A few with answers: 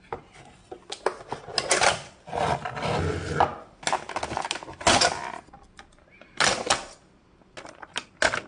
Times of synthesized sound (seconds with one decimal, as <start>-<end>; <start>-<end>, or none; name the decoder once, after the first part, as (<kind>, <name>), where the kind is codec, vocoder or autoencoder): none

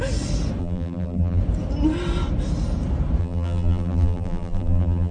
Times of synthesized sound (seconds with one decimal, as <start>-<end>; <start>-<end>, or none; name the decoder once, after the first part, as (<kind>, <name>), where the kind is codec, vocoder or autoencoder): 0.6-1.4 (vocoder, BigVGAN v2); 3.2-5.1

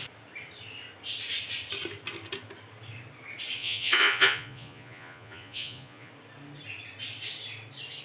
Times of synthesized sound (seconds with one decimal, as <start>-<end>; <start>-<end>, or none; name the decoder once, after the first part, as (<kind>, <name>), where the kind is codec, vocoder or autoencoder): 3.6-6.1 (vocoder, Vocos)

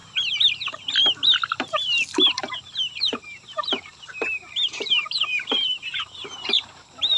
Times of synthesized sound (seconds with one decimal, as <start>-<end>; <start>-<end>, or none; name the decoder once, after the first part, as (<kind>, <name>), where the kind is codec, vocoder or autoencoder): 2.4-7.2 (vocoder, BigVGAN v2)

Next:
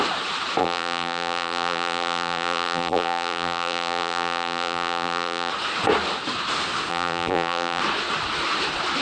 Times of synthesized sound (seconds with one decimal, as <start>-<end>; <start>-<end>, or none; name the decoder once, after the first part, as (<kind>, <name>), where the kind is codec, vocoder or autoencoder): 0.6-5.5 (vocoder, BigVGAN v2); 6.9-7.8